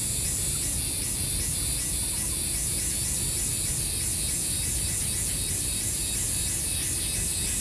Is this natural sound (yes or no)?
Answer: yes